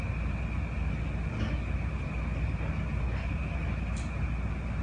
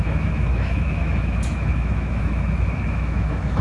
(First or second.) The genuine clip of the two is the first